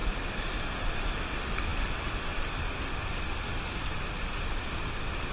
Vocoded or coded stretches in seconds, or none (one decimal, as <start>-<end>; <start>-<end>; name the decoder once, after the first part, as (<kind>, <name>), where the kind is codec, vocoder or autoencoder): none